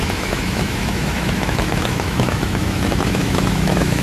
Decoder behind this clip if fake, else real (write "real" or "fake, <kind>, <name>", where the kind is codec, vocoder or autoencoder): fake, autoencoder, DAC-VAE